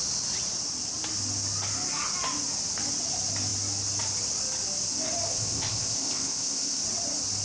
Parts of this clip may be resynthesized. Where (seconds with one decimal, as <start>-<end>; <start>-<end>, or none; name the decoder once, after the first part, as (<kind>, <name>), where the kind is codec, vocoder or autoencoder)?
5.3-6.8 (codec, ZipCodec)